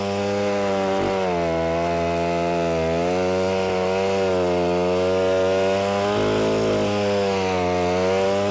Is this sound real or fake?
real